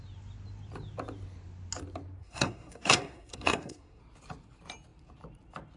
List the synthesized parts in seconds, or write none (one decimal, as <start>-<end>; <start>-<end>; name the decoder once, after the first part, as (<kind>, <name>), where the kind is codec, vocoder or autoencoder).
2.2-4.0 (codec, SNAC)